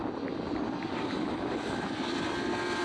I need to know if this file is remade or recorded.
recorded